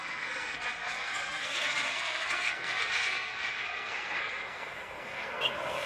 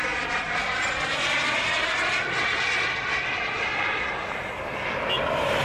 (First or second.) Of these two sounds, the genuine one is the second